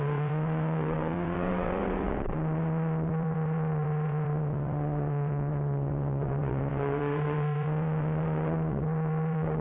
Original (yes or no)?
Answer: no